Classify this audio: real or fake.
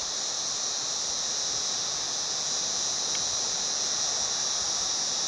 real